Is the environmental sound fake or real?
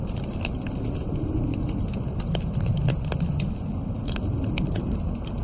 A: real